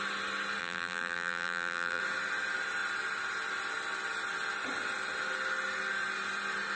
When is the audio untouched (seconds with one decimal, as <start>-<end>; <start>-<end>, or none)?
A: 0.0-0.6; 2.0-6.8

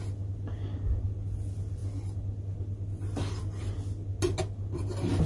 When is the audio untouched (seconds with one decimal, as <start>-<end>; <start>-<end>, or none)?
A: 0.0-5.3

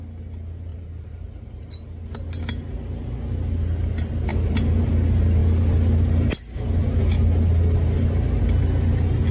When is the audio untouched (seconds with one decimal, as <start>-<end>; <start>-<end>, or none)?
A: 0.0-0.7; 1.7-4.3; 4.9-9.3

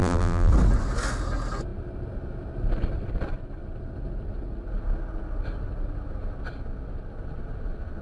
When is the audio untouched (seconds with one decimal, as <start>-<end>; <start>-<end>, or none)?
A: 0.5-8.0

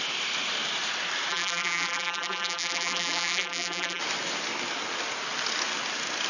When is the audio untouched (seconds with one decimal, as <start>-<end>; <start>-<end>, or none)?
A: 0.0-1.3; 4.0-6.3

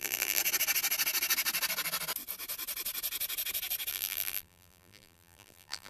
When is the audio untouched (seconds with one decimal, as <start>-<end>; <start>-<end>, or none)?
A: 0.4-3.9

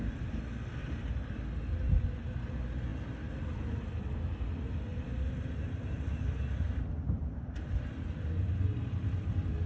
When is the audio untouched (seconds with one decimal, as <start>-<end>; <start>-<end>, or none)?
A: 0.0-0.8; 1.3-4.9; 7.8-9.7